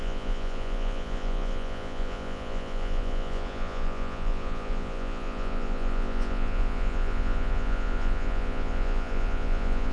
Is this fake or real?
fake